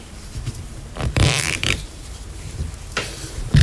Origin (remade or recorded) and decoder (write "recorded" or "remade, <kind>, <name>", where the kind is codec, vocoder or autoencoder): remade, vocoder, BigVGAN v2